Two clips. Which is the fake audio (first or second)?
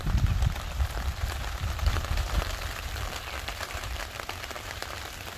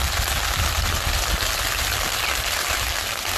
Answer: first